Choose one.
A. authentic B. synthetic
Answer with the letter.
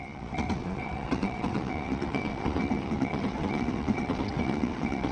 B